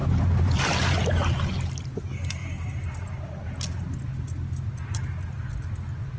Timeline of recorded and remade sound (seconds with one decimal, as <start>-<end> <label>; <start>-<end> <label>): 0.0-6.2 recorded